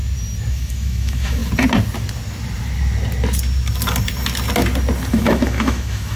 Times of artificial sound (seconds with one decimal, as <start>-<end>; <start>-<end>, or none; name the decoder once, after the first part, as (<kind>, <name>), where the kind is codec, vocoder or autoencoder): 0.5-1.4 (autoencoder, DAC-VAE); 5.1-6.2